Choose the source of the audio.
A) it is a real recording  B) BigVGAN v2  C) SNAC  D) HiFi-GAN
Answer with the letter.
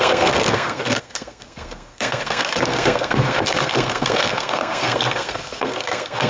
C